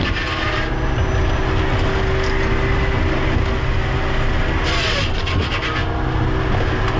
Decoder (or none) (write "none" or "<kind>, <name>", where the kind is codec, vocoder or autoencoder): none